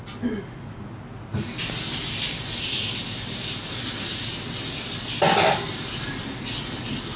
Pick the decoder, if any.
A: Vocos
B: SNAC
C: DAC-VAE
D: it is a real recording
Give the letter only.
D